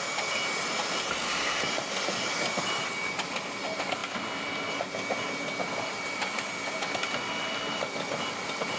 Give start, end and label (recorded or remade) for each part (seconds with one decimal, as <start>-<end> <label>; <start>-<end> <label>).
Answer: 0.0-8.8 recorded